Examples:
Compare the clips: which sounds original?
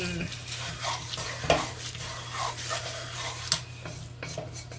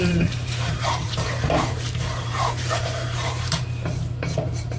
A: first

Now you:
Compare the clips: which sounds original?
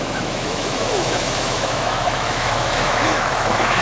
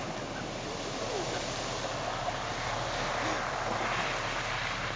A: second